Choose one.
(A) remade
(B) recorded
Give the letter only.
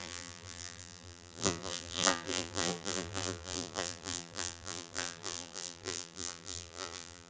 A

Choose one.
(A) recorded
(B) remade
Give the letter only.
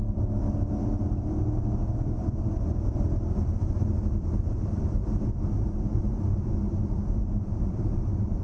B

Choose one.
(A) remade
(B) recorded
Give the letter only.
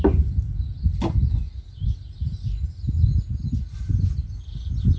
B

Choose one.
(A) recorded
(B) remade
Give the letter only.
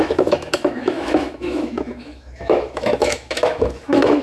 B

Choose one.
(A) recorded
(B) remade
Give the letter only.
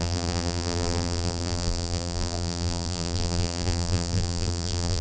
B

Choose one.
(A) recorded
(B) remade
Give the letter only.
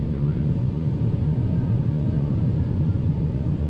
B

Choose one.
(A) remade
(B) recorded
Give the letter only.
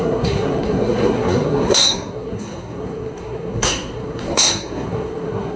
A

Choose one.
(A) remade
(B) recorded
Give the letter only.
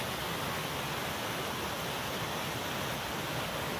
B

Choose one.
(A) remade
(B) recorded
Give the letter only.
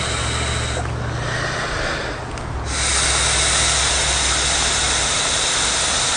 B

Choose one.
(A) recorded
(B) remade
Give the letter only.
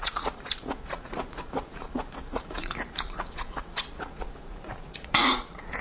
B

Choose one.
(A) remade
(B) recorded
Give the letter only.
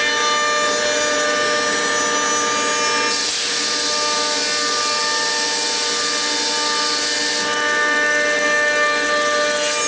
B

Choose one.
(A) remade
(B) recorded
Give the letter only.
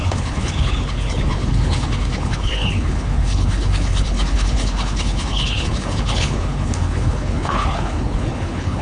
A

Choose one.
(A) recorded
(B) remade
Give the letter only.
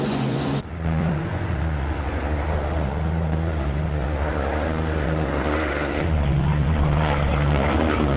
B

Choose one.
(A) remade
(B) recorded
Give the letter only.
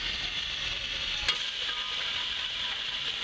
B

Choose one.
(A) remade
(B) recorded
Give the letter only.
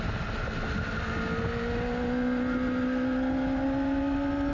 B